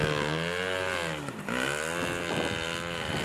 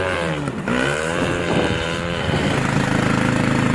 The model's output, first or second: second